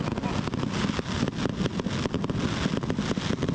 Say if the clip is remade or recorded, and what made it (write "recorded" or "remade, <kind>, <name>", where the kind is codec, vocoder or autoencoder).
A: recorded